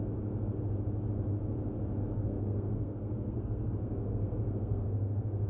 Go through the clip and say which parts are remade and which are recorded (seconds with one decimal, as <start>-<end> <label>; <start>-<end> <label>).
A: 0.0-2.0 recorded; 2.0-5.5 remade